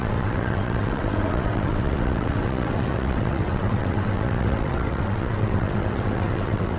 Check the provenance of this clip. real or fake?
fake